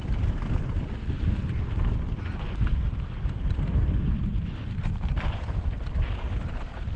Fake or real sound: real